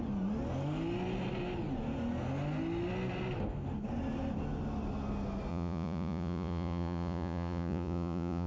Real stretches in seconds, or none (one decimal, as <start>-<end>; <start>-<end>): 0.0-5.5